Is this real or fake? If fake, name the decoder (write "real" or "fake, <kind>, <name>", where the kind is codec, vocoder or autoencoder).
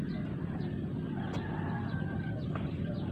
real